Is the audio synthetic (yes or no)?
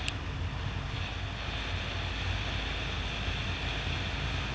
no